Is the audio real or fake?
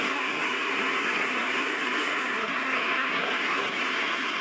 fake